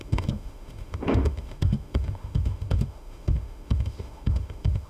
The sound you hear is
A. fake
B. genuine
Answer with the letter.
A